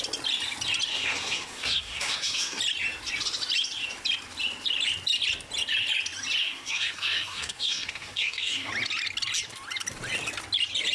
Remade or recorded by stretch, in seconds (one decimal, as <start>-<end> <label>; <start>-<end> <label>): 0.0-0.9 recorded; 0.9-2.6 remade; 2.6-6.4 recorded; 6.4-8.7 remade; 8.7-10.9 recorded